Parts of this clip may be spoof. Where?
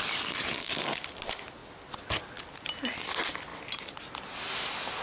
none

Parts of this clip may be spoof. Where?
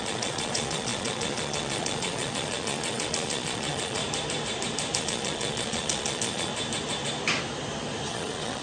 0.0-4.0 (vocoder, Vocos); 5.0-6.5; 8.1-8.6